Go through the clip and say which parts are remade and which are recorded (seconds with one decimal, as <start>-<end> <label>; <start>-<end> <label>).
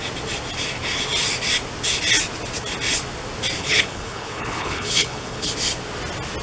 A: 0.0-3.6 recorded; 3.6-5.5 remade; 5.5-6.4 recorded